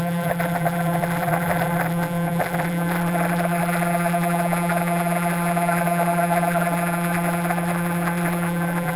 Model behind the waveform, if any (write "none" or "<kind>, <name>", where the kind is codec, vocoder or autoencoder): vocoder, BigVGAN v2